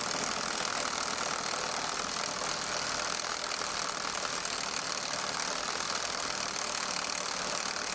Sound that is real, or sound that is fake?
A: real